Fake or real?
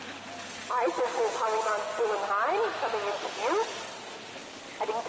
real